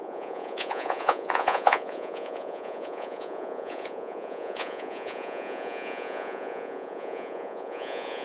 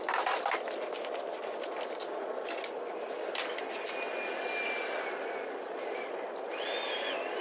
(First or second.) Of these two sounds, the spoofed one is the first